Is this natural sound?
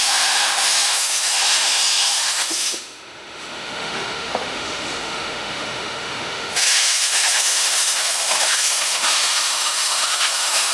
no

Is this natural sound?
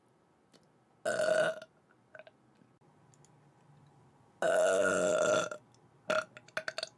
yes